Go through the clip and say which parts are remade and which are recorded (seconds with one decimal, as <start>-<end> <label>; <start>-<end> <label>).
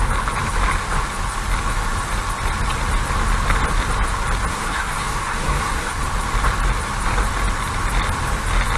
0.0-4.5 recorded; 4.5-5.9 remade; 5.9-8.8 recorded